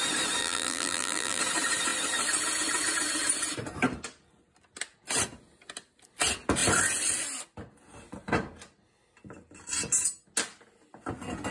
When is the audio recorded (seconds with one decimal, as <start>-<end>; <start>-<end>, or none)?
0.0-0.4; 1.4-11.5